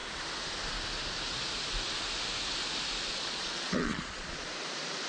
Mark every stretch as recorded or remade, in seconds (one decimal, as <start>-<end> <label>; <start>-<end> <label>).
0.0-3.1 recorded; 3.1-4.5 remade; 4.5-5.1 recorded